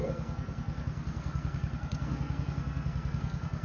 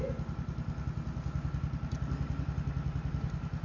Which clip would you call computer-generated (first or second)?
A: first